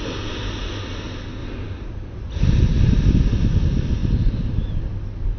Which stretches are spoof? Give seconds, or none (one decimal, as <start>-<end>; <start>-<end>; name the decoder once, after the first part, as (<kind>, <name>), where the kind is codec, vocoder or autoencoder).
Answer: 1.4-2.6 (vocoder, BigVGAN v2)

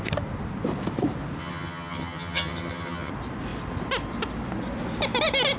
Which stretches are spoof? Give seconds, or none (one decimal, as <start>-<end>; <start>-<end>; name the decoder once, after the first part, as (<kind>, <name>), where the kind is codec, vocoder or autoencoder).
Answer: 1.4-3.1 (vocoder, HiFi-GAN)

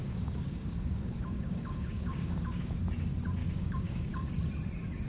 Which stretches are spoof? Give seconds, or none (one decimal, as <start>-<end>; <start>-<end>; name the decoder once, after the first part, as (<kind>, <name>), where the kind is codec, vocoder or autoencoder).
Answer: 0.0-2.8 (codec, DAC); 3.4-4.3